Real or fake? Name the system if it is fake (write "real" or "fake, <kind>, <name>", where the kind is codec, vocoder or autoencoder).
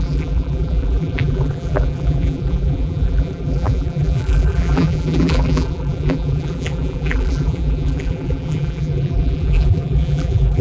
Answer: fake, vocoder, BigVGAN v2